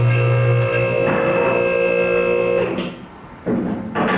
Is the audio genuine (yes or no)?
yes